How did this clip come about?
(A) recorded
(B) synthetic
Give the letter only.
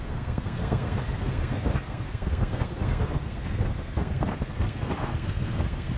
B